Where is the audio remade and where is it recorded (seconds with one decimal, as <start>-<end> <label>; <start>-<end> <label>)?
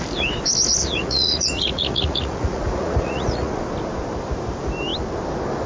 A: 0.0-0.8 recorded; 0.8-3.6 remade; 3.6-5.7 recorded